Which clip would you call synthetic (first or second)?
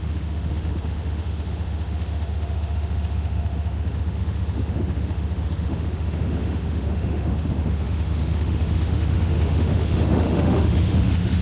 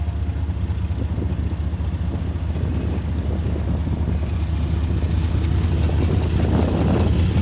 first